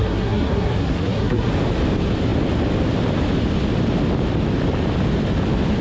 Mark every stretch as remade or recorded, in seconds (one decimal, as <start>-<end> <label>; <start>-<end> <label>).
0.0-1.5 remade; 1.5-5.8 recorded